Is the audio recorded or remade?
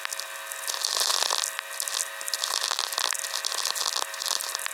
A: recorded